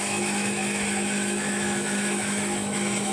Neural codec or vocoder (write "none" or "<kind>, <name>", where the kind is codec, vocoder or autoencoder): autoencoder, DAC-VAE